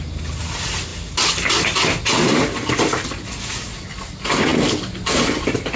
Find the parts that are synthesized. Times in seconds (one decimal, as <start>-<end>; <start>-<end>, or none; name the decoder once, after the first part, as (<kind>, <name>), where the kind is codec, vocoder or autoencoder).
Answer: none